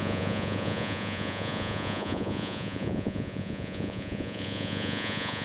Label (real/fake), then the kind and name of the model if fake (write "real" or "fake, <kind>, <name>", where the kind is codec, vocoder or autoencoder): fake, vocoder, Vocos